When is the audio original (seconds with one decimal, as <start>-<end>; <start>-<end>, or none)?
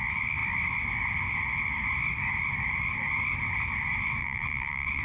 0.0-4.2